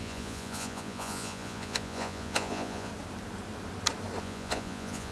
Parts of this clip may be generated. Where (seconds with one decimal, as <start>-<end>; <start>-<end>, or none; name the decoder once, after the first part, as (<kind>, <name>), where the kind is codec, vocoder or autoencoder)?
0.0-2.9 (vocoder, Vocos); 4.2-5.1